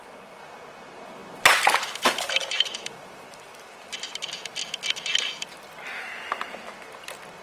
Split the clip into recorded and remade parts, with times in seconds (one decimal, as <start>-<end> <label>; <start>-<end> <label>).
0.0-2.4 recorded; 2.4-3.7 remade; 3.7-7.4 recorded